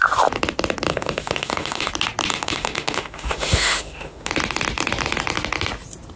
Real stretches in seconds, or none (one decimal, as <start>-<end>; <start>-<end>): 0.0-0.9; 1.9-2.3; 4.3-6.2